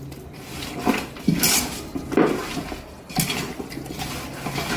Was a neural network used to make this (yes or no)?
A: no